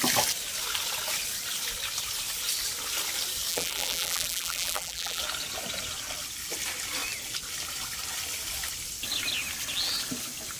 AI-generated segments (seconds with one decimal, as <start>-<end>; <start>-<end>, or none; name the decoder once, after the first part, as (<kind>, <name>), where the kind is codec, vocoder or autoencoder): 3.5-5.2 (vocoder, BigVGAN v2)